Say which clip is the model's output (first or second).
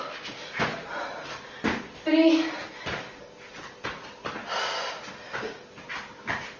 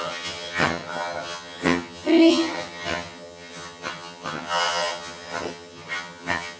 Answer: second